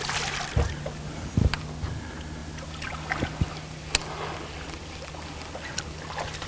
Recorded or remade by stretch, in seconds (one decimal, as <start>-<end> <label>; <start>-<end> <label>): 0.0-6.5 recorded